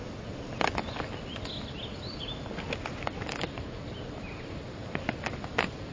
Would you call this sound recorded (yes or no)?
yes